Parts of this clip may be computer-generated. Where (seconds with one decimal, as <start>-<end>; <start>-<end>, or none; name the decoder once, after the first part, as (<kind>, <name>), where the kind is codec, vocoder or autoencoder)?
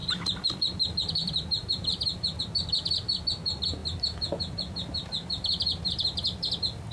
0.0-2.4 (vocoder, BigVGAN v2)